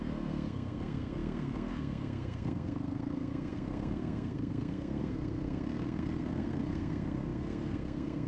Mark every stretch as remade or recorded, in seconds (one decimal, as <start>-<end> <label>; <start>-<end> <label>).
0.0-8.3 remade